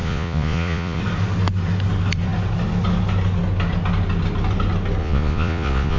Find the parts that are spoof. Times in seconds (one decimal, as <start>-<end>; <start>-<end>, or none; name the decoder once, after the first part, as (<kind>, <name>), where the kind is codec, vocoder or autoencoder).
0.0-1.0 (vocoder, Vocos); 5.0-6.0